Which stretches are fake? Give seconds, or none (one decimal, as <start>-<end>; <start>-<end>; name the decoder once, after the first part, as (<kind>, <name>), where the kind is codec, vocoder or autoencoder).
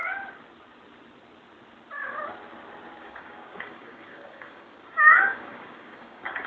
3.0-6.5 (codec, DAC)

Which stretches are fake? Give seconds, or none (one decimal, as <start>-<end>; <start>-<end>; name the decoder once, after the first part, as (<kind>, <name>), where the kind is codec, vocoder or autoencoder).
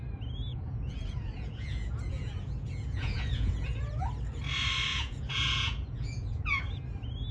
0.5-4.1 (vocoder, Vocos); 4.9-6.6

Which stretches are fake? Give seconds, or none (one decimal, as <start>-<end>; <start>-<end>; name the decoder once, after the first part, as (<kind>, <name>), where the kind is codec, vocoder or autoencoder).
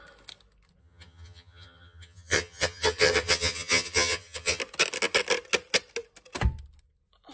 0.8-4.6 (vocoder, HiFi-GAN)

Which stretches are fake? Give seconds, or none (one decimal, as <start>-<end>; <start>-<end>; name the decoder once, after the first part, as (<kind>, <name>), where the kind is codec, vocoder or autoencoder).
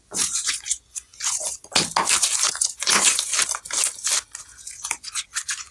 0.0-1.6 (vocoder, Vocos); 2.5-3.3; 4.4-5.7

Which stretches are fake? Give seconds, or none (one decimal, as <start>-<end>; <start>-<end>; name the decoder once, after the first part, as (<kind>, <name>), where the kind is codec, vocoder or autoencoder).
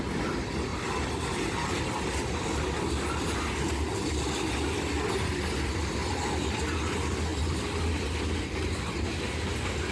none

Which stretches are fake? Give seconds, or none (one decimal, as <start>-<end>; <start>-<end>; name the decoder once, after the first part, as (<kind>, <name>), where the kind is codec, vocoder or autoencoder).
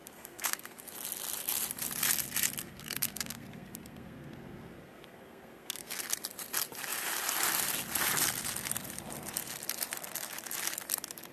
0.0-0.8 (codec, SNAC); 2.6-6.0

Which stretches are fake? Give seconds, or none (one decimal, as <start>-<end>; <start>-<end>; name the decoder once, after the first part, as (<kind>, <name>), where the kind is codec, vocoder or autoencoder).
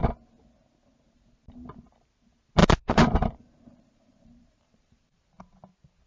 2.6-5.4 (vocoder, BigVGAN v2)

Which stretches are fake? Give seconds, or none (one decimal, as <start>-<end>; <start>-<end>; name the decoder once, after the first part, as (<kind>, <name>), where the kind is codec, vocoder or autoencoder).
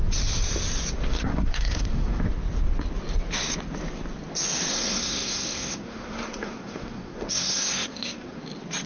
1.1-2.2 (codec, SNAC); 4.7-8.4